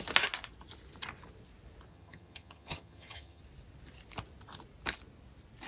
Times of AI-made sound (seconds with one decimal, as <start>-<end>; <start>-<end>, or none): 1.9-3.4